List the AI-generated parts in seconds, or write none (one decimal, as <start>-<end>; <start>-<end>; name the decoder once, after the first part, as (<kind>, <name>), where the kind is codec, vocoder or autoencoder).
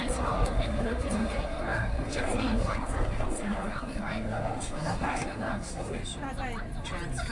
0.0-6.0 (codec, SNAC)